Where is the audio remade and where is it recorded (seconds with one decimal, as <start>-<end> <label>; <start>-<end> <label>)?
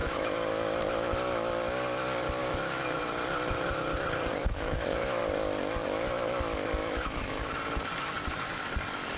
0.0-0.5 remade; 0.5-2.4 recorded; 2.4-3.0 remade; 3.0-4.4 recorded; 4.4-5.2 remade; 5.2-6.8 recorded; 6.8-7.5 remade; 7.5-9.2 recorded